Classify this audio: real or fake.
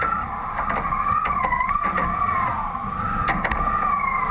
real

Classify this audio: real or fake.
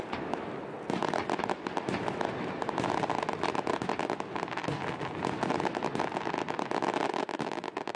real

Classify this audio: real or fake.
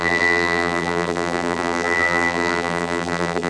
fake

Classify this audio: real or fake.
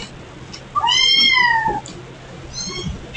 real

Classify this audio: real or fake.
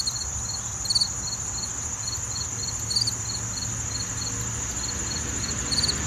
real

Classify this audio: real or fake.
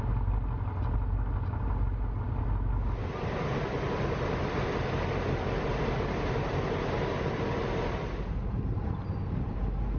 real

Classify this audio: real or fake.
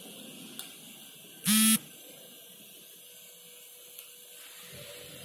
real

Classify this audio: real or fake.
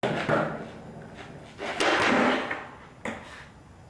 real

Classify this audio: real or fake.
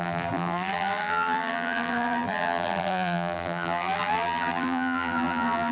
fake